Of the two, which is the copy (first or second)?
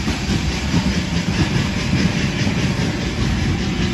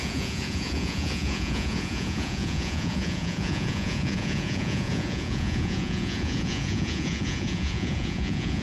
second